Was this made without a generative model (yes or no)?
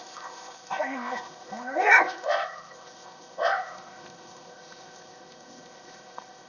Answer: no